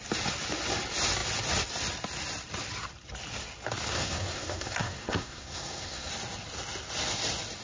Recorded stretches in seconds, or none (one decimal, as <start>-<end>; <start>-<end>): 0.0-3.9; 6.1-7.6